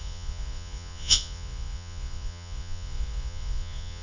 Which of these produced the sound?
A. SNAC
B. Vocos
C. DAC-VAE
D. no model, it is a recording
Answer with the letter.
B